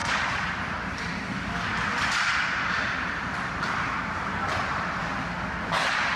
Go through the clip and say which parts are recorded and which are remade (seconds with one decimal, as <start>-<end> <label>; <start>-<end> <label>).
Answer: 0.0-4.6 recorded; 4.6-5.1 remade; 5.1-6.2 recorded